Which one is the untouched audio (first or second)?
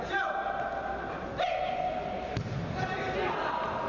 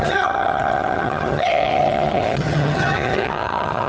first